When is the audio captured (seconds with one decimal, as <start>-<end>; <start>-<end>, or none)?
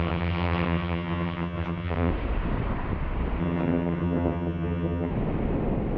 2.1-3.4; 5.1-6.0